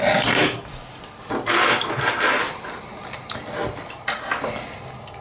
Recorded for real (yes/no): yes